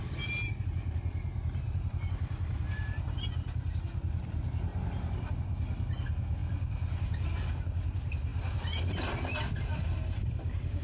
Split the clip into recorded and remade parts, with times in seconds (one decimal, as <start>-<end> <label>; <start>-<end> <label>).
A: 0.0-1.3 recorded; 1.3-2.1 remade; 2.1-4.7 recorded; 4.7-5.3 remade; 5.3-10.8 recorded